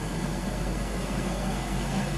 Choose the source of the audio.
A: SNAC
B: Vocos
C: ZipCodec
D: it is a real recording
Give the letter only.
A